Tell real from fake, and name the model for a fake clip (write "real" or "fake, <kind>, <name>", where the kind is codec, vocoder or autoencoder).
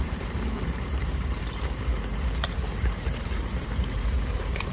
fake, vocoder, BigVGAN v2